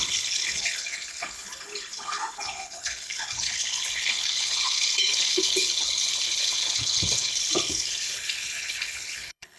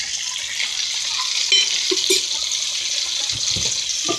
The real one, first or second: second